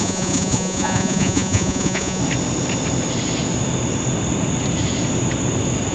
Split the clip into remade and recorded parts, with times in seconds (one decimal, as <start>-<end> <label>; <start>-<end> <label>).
0.0-2.2 remade; 2.2-5.9 recorded